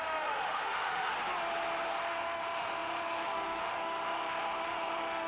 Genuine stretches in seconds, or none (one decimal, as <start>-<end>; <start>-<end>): 1.1-1.9